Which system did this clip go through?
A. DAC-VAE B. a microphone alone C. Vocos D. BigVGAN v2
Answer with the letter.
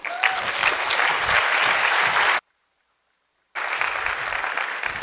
B